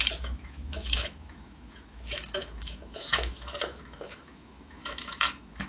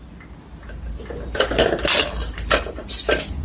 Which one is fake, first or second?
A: first